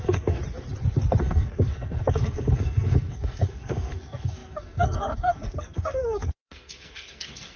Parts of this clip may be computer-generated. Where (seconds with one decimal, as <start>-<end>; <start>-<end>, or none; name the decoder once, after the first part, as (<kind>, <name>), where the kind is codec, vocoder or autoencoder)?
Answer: 0.0-0.4 (codec, SNAC); 1.2-7.6